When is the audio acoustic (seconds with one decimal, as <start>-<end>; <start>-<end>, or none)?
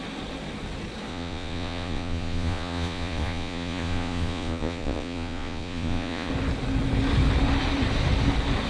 0.0-1.1; 6.3-8.7